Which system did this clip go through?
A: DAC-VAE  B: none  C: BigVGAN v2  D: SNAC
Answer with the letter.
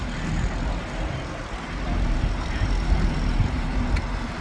C